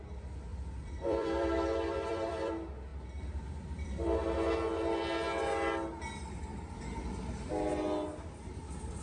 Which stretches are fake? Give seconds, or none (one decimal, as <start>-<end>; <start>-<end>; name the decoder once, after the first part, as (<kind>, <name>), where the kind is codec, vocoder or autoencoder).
0.5-2.5 (vocoder, BigVGAN v2); 6.5-7.5